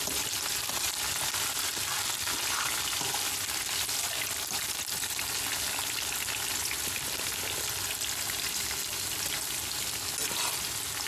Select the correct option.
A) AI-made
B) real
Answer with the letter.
B